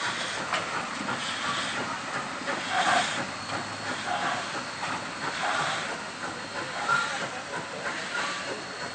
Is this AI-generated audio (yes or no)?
no